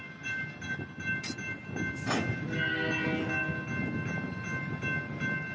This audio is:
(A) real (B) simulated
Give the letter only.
A